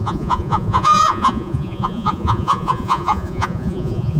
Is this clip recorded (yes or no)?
no